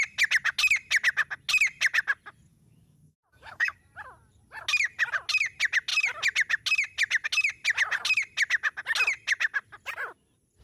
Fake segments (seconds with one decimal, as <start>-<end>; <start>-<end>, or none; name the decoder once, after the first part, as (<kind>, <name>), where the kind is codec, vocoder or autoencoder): 2.5-3.8 (codec, DAC)

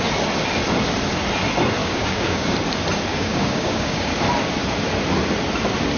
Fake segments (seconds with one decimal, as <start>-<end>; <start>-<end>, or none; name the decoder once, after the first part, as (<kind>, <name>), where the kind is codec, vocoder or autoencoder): 1.8-2.5 (codec, DAC); 3.1-4.1

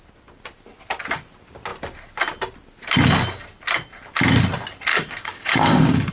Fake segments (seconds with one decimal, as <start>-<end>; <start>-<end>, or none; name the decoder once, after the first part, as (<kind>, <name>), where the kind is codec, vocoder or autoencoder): 4.9-6.1 (codec, DAC)